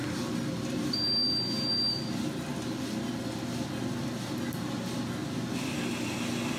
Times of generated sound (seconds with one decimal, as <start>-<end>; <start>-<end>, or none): none